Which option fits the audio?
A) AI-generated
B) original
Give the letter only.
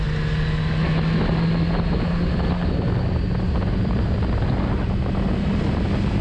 B